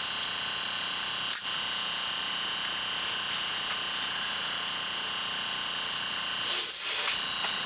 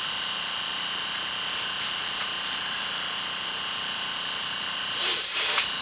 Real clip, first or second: first